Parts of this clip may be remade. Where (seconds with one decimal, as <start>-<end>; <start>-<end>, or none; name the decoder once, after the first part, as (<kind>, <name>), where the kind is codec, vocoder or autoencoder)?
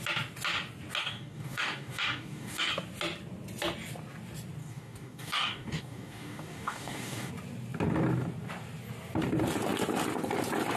1.0-2.7 (codec, DAC); 4.6-7.3